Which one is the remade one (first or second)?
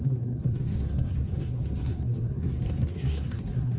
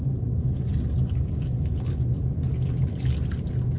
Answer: first